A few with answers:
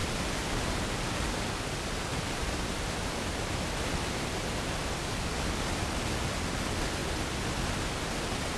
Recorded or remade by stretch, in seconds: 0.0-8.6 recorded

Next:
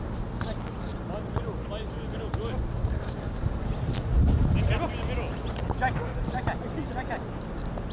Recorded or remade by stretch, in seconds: 0.0-7.9 recorded

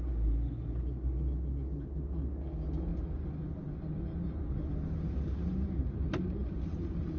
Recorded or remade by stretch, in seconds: 0.0-7.2 recorded

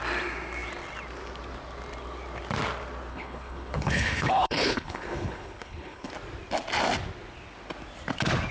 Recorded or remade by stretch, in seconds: 0.0-3.1 recorded; 3.1-6.1 remade; 6.1-8.5 recorded

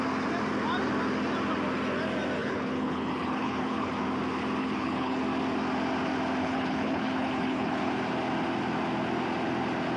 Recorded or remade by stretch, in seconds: 0.0-2.4 recorded; 2.4-3.9 remade; 3.9-4.6 recorded; 4.6-5.2 remade; 5.2-6.4 recorded; 6.4-7.9 remade; 7.9-10.0 recorded